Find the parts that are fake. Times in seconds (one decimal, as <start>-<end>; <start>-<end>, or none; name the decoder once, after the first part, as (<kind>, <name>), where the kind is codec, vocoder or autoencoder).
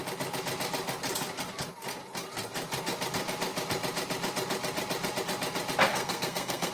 5.9-6.7 (codec, SNAC)